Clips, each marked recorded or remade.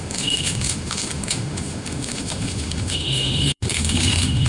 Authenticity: remade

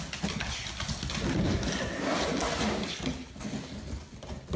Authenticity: recorded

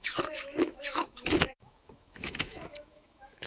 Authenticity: remade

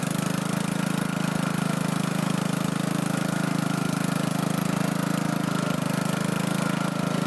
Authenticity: recorded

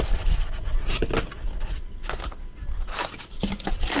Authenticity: recorded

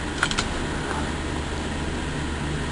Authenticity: recorded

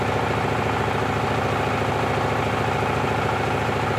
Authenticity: recorded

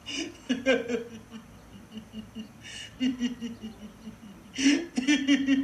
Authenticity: recorded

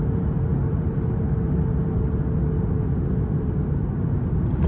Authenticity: recorded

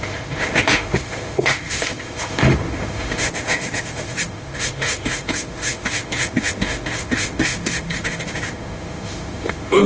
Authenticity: remade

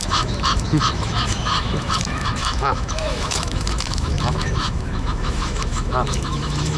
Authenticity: remade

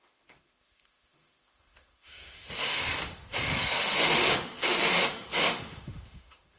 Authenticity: remade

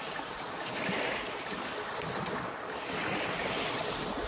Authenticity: recorded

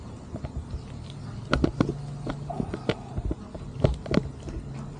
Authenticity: recorded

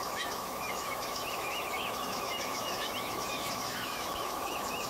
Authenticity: remade